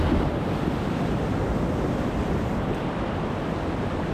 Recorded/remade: recorded